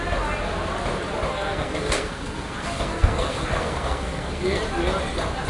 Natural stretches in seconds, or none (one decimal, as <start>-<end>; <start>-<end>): 0.0-1.3; 4.6-5.5